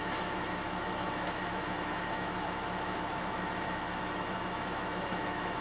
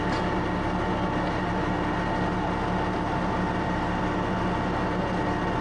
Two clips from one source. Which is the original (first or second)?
second